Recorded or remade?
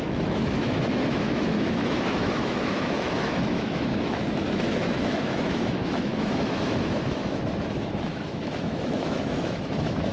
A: remade